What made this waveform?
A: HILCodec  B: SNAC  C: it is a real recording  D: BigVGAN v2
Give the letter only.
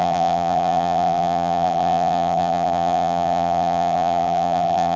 D